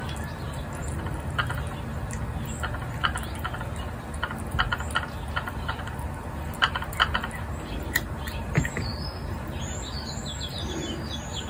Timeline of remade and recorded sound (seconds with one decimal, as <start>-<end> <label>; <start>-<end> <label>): 0.0-11.5 recorded